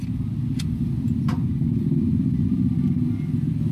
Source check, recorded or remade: recorded